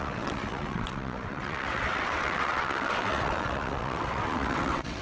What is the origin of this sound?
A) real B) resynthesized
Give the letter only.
B